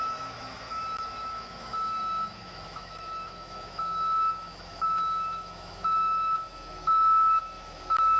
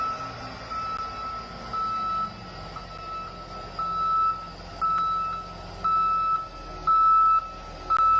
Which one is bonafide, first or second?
second